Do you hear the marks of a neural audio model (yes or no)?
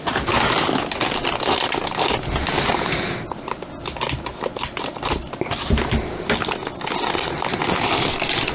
no